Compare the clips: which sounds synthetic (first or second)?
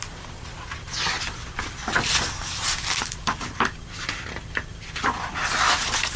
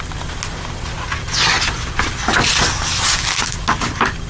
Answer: first